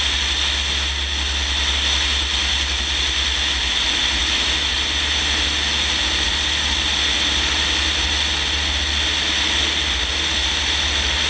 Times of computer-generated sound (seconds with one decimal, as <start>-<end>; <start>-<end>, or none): none